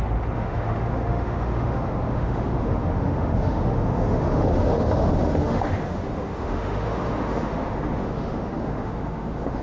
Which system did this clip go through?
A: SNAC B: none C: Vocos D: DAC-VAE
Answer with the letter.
D